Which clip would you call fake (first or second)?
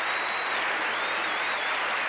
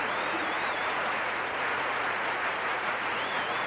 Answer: second